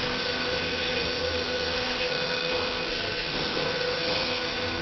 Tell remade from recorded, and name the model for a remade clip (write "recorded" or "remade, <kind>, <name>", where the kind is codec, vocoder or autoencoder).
remade, codec, SNAC